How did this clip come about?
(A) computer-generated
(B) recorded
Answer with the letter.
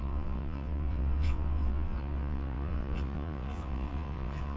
A